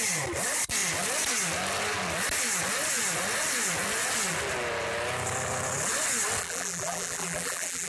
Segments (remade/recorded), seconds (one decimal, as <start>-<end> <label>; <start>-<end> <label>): 0.0-6.4 recorded; 6.4-7.9 remade